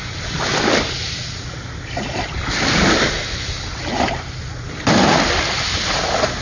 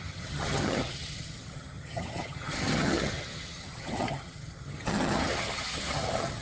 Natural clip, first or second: first